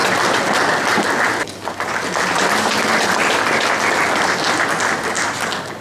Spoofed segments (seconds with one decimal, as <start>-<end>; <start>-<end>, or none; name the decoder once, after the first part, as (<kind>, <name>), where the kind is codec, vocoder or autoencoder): none